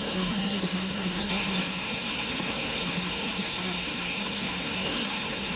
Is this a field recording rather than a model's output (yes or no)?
no